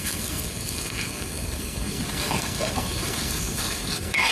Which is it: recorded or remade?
remade